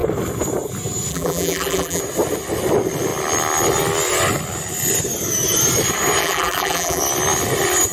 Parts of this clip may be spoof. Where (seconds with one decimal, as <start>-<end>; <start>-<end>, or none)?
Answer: 1.1-2.0; 6.2-7.0